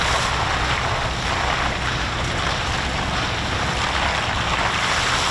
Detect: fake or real real